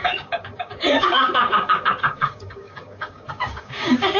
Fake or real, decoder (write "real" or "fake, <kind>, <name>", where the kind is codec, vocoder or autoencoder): fake, codec, DAC